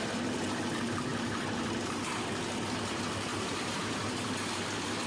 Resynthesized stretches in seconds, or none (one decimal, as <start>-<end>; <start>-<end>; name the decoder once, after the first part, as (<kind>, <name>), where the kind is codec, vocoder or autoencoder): 1.1-1.8 (vocoder, BigVGAN v2); 3.3-4.6